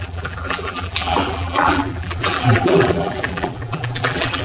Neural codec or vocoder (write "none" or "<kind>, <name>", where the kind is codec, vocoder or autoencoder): vocoder, BigVGAN v2